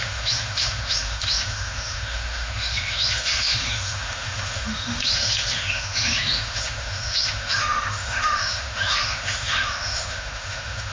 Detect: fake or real fake